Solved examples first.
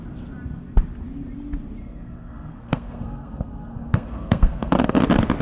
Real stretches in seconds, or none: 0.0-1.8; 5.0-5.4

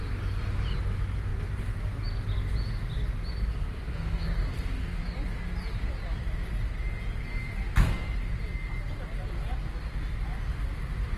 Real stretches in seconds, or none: 0.0-3.9; 5.0-11.2